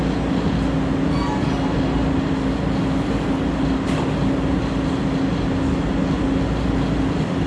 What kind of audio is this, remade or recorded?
recorded